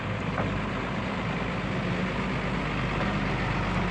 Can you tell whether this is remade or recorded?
recorded